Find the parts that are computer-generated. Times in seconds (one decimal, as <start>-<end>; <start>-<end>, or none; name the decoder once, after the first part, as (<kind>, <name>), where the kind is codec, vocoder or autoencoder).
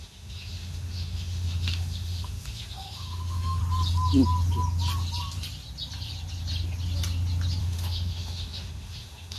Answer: 0.0-3.6 (autoencoder, DAC-VAE); 7.6-9.4